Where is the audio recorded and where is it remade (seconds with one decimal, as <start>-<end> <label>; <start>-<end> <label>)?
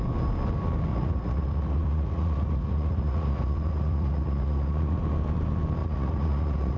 0.0-0.9 recorded; 0.9-5.0 remade; 5.0-5.8 recorded; 5.8-6.8 remade